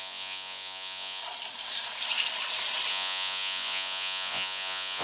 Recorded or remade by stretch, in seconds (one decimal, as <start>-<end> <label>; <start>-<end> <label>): 0.0-1.2 remade; 1.2-2.9 recorded; 2.9-5.0 remade